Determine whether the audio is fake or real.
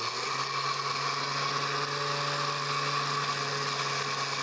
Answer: real